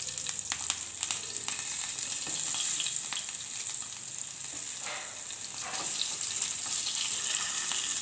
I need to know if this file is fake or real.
real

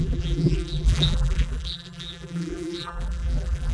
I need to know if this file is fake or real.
fake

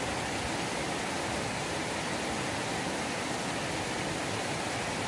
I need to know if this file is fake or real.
real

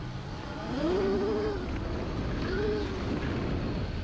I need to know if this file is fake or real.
real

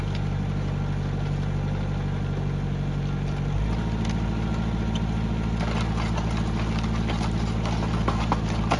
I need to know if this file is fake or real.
real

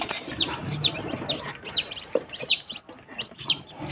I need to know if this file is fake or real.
fake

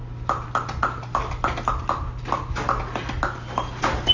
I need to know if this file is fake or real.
real